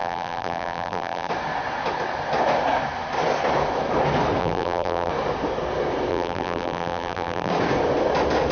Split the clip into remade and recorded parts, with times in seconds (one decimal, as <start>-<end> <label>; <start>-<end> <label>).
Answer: 0.0-1.3 remade; 1.3-4.4 recorded; 4.4-5.1 remade; 5.1-6.1 recorded; 6.1-7.5 remade; 7.5-8.5 recorded